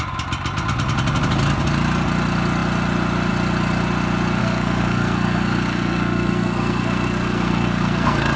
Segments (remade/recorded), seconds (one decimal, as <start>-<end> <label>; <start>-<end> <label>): 0.0-4.4 recorded; 4.4-8.4 remade